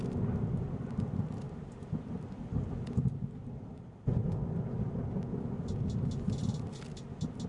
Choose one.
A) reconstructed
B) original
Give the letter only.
B